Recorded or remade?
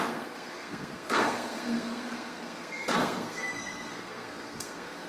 remade